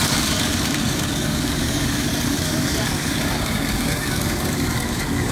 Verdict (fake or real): fake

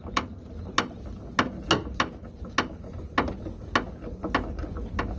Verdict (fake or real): real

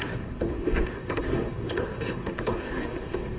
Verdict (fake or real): fake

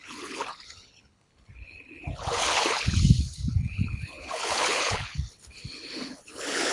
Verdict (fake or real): fake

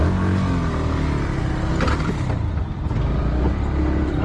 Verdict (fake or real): real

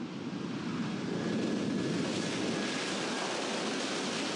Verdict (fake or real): real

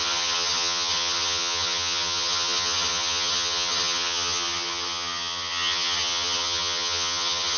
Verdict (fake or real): fake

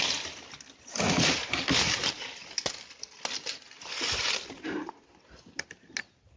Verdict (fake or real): real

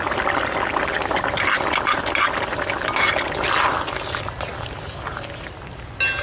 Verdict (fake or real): real